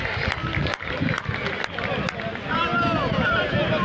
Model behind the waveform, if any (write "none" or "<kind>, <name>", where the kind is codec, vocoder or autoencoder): none